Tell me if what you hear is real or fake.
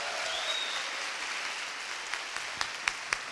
real